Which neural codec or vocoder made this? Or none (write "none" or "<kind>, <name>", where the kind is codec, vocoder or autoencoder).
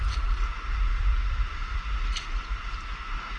none